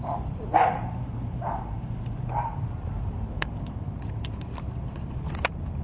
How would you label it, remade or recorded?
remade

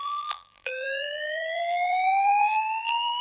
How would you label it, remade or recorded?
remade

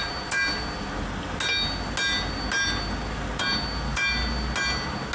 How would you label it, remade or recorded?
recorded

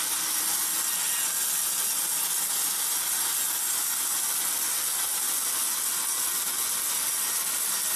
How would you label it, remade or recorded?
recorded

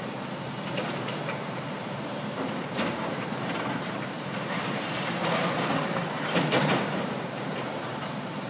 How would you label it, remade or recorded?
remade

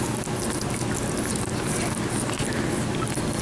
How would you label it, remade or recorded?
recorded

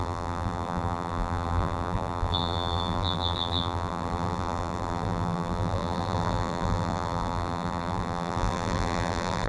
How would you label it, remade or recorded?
remade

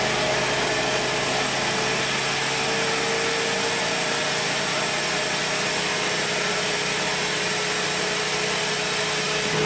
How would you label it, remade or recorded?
recorded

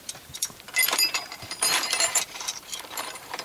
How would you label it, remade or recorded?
remade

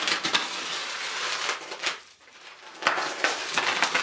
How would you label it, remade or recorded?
remade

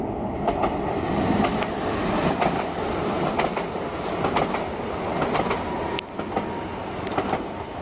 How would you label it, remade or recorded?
recorded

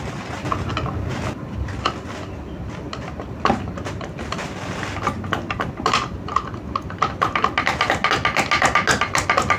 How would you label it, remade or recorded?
recorded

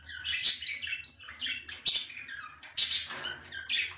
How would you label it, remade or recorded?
recorded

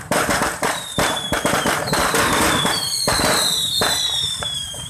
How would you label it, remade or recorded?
remade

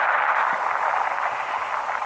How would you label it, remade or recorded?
recorded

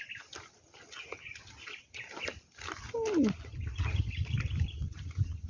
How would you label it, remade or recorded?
recorded